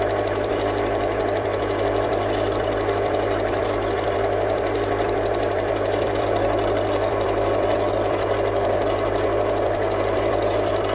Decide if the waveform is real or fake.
fake